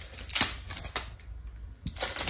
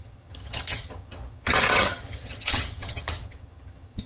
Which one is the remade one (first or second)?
second